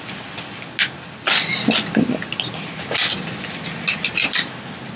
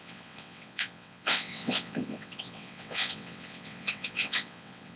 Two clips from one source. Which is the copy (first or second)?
second